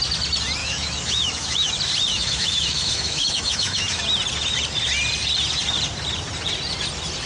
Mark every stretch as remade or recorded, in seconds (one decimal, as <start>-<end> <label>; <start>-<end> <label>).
0.0-0.6 recorded; 0.6-1.7 remade; 1.7-2.1 recorded; 2.1-4.0 remade; 4.0-7.3 recorded